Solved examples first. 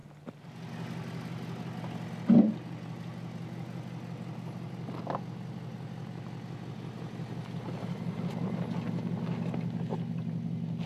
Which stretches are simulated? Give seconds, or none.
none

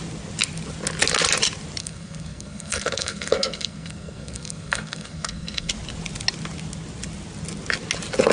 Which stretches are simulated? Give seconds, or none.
1.8-5.7

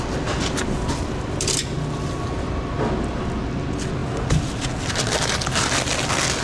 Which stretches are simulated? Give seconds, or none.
none

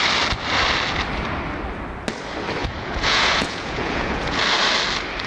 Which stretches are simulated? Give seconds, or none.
2.6-4.4